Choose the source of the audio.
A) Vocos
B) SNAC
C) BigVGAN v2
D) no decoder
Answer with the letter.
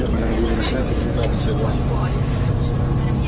D